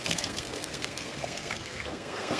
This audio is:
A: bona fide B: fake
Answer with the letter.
B